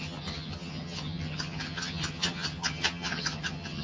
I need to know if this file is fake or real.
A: fake